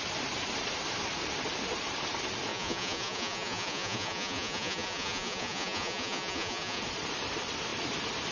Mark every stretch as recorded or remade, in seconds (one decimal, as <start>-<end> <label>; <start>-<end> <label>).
0.0-2.5 recorded; 2.5-6.8 remade; 6.8-8.3 recorded

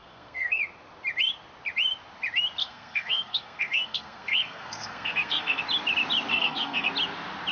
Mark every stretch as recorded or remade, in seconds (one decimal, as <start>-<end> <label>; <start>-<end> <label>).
0.0-0.6 remade; 0.6-2.6 recorded; 2.6-5.6 remade; 5.6-6.3 recorded; 6.3-6.9 remade; 6.9-7.5 recorded

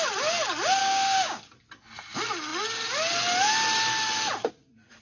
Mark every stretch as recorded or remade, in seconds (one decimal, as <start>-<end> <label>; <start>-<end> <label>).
0.0-0.8 recorded; 0.8-1.4 remade; 1.4-5.0 recorded

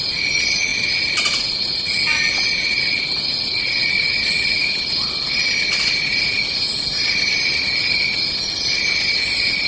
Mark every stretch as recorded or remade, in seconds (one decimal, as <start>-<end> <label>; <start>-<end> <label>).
0.0-9.7 recorded

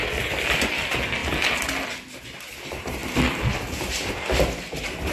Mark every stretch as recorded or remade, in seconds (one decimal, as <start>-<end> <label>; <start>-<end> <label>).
0.0-5.1 recorded

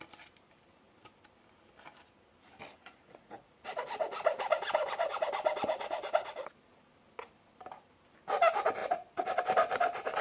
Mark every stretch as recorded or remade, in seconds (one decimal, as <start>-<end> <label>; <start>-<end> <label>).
0.0-2.8 recorded; 2.8-4.5 remade; 4.5-8.8 recorded; 8.8-9.4 remade; 9.4-10.2 recorded

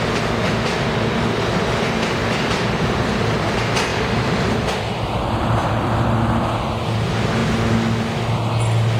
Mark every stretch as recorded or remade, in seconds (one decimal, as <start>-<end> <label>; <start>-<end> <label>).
0.0-2.2 recorded; 2.2-3.5 remade; 3.5-3.9 recorded; 3.9-4.4 remade; 4.4-5.6 recorded; 5.6-6.4 remade; 6.4-9.0 recorded